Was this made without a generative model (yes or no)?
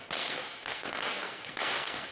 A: no